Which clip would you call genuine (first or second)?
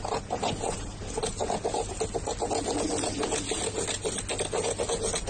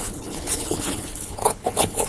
first